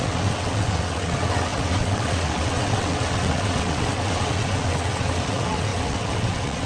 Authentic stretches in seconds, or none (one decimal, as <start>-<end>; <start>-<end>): none